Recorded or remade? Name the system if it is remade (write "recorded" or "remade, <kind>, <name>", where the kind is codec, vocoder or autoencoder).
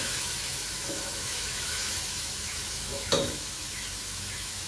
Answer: remade, autoencoder, DAC-VAE